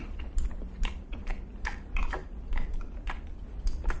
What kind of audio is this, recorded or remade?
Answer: recorded